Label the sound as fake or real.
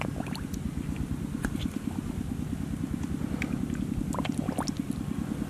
real